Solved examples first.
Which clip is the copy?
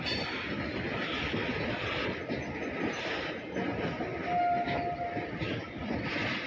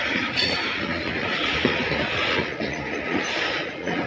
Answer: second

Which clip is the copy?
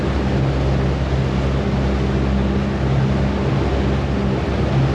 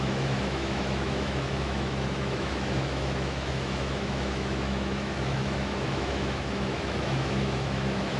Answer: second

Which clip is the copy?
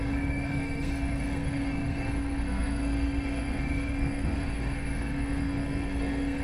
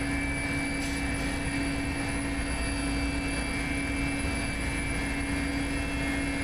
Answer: first